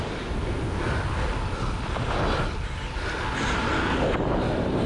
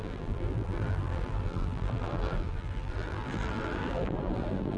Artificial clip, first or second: second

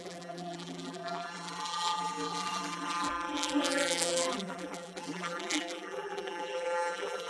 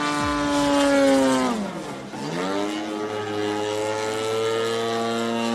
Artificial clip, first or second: first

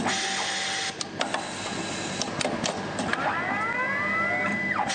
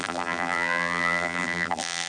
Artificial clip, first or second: second